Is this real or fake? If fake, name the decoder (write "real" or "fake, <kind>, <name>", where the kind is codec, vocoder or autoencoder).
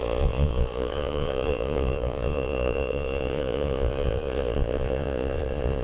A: fake, vocoder, Vocos